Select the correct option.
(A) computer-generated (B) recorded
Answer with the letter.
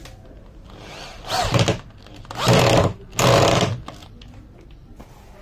B